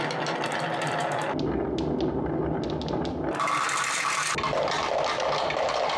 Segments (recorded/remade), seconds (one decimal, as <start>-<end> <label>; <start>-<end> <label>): 0.0-6.0 recorded